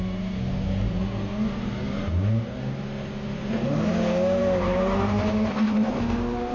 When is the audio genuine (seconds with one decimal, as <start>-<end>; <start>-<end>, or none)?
0.0-5.5; 6.0-6.5

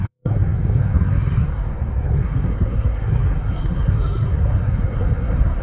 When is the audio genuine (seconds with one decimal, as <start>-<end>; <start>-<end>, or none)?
none